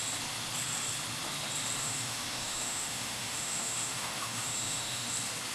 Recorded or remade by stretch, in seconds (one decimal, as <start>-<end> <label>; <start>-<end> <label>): 0.0-1.8 recorded; 1.8-5.1 remade; 5.1-5.5 recorded

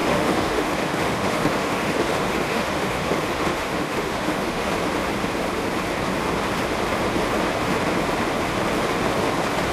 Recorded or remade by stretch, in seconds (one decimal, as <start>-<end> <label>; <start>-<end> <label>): 0.0-4.7 remade; 4.7-9.7 recorded

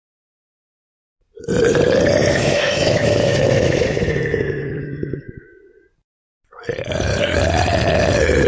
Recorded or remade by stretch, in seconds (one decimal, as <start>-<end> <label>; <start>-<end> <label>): 0.0-2.2 recorded; 2.2-5.6 remade; 5.6-8.5 recorded